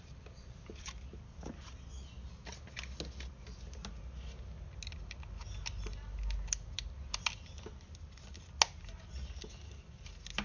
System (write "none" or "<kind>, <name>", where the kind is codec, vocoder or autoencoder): none